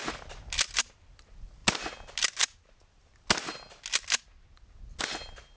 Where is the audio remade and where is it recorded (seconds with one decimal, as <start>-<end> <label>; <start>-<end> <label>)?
0.0-5.6 recorded